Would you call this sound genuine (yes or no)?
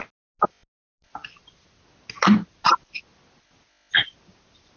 yes